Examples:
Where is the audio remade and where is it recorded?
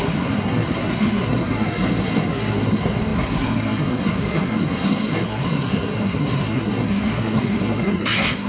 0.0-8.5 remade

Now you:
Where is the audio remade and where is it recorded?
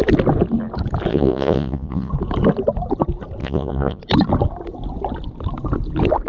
0.0-1.1 recorded; 1.1-2.1 remade; 2.1-3.4 recorded; 3.4-4.0 remade; 4.0-6.3 recorded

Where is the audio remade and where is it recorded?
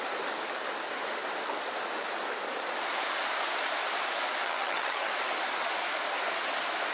0.0-4.4 recorded; 4.4-5.1 remade; 5.1-6.9 recorded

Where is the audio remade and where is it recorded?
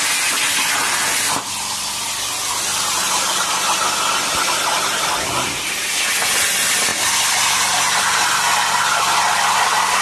0.0-10.0 recorded